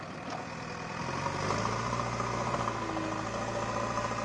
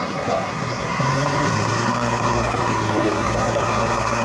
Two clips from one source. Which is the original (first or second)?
first